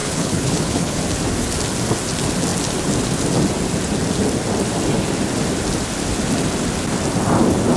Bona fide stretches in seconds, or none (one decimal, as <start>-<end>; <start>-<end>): 1.0-7.8